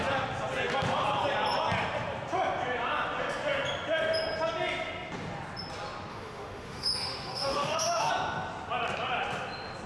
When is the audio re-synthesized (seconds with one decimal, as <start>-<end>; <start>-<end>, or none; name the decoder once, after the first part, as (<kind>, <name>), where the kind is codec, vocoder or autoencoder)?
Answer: 6.1-8.1 (autoencoder, DAC-VAE)